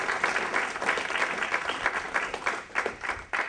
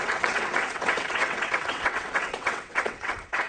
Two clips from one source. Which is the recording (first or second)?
first